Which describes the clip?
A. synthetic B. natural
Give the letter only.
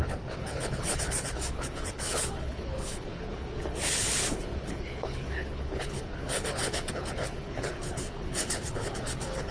A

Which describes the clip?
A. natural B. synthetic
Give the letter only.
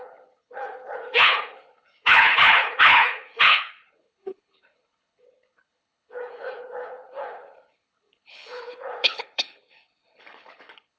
B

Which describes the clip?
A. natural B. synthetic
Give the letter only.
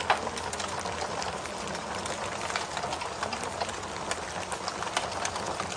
A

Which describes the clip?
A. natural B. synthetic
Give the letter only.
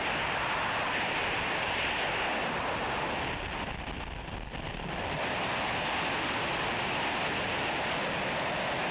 A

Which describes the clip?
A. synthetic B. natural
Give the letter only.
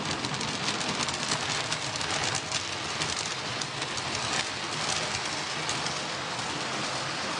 B